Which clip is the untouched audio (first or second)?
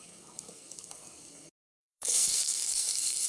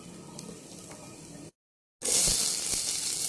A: second